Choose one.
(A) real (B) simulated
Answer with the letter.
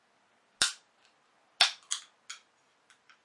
A